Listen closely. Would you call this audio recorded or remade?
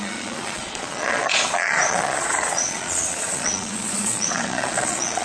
remade